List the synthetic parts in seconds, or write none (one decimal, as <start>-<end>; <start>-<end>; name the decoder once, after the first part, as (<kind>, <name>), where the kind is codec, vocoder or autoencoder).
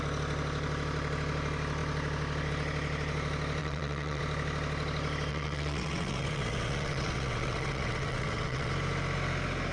3.6-4.2 (vocoder, WaveNeXt); 5.3-8.7